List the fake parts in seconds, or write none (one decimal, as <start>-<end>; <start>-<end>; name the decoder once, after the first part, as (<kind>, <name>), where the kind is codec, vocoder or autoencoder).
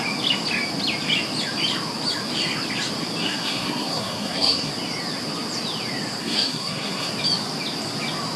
3.2-4.7 (codec, SNAC); 6.2-7.1